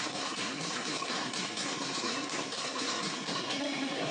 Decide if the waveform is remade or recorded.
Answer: remade